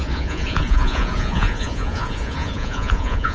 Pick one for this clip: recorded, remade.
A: remade